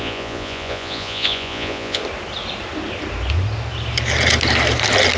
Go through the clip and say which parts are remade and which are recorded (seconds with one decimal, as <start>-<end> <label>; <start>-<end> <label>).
0.0-2.0 remade; 2.0-5.2 recorded